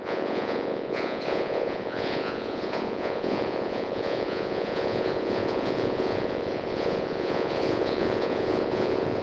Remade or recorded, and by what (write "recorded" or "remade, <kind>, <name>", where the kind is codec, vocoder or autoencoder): remade, vocoder, Vocos